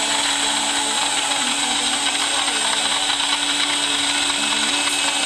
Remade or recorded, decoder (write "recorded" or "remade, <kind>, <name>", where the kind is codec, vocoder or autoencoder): recorded